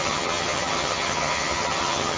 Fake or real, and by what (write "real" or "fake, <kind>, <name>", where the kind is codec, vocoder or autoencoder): fake, vocoder, HiFi-GAN